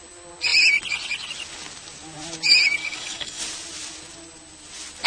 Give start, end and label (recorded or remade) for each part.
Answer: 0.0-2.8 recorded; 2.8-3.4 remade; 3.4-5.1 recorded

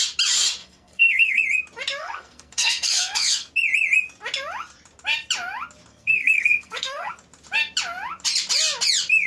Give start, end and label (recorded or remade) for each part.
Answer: 0.0-0.6 recorded; 0.6-1.4 remade; 1.4-2.0 recorded; 2.0-3.5 remade; 3.5-5.9 recorded; 5.9-7.1 remade; 7.1-9.3 recorded

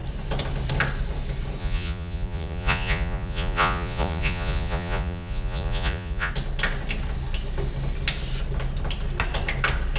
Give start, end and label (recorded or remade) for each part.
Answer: 0.0-1.6 recorded; 1.6-6.3 remade; 6.3-10.0 recorded

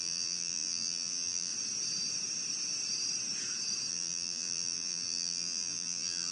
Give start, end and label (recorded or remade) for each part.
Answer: 0.0-1.5 remade; 1.5-3.9 recorded; 3.9-6.3 remade

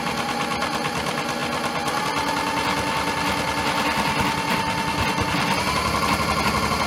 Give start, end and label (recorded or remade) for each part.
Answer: 0.0-6.9 recorded